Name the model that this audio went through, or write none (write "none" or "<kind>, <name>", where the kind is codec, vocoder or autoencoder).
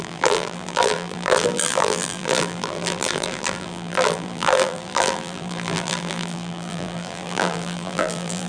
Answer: vocoder, BigVGAN v2